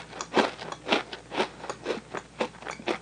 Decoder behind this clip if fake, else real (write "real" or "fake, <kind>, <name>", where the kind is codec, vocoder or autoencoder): real